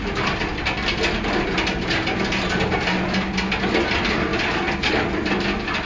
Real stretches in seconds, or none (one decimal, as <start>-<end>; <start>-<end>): 0.0-4.3; 4.9-5.9